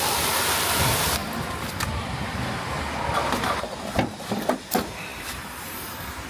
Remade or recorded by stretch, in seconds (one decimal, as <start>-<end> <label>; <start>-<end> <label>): 0.0-1.2 recorded; 1.2-2.8 remade; 2.8-5.1 recorded; 5.1-6.3 remade